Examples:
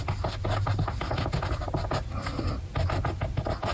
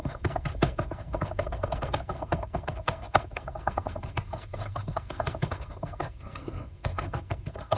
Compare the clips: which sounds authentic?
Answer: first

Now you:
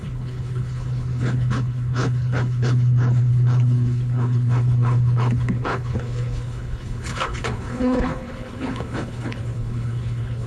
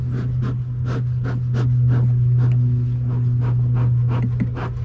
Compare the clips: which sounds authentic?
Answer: second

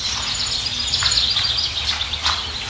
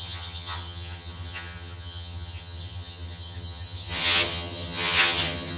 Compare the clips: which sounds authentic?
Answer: first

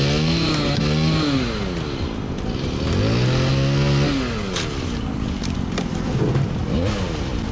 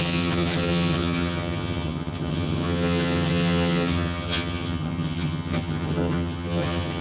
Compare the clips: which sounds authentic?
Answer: first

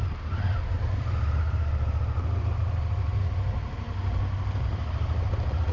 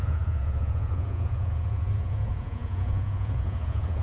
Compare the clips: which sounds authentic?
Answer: first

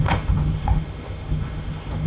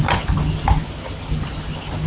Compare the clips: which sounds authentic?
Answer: second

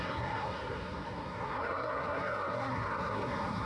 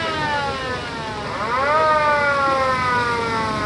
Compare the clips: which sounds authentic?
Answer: second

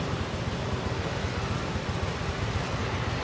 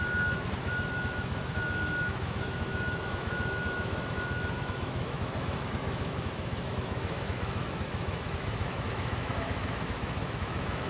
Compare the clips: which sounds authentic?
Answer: first